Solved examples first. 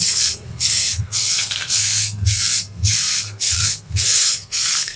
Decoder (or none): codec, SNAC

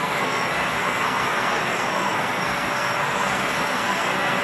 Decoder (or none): codec, SNAC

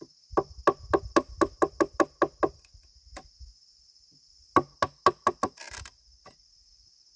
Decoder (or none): none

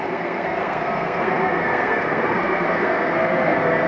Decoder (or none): codec, SNAC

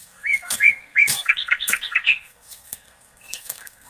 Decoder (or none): codec, SNAC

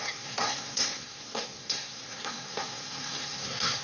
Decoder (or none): codec, SNAC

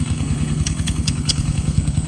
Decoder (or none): codec, SNAC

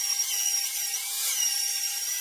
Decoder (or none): none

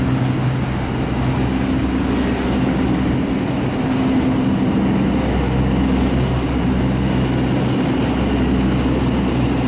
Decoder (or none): none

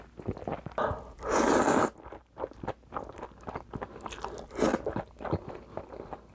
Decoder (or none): none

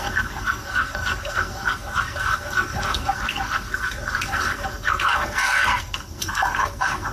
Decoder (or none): codec, SNAC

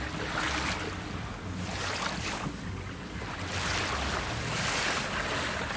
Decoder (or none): none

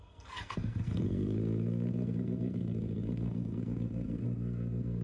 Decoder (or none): codec, SNAC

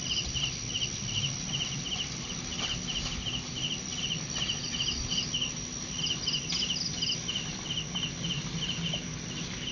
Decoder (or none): none